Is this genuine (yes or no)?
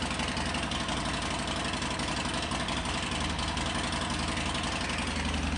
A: yes